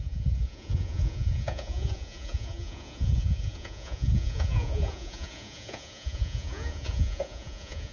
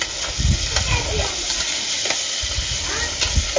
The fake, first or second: first